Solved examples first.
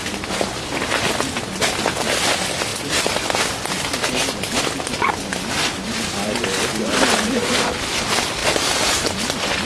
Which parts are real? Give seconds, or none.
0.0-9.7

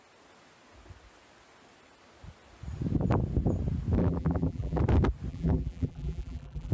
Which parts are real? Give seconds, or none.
0.0-4.0; 4.8-5.3

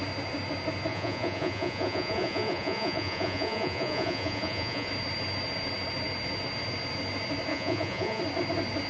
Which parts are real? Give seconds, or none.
0.0-0.9; 4.9-7.5; 8.2-8.9

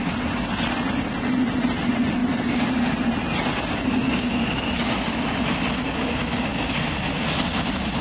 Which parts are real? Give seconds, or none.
0.0-2.2; 2.7-8.0

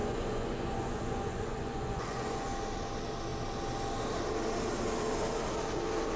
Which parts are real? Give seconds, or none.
2.5-6.2

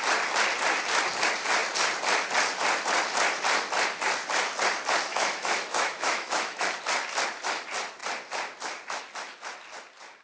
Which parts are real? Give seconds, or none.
0.0-5.1; 6.7-10.2

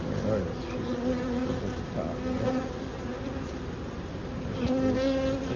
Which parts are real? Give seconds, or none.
0.0-5.6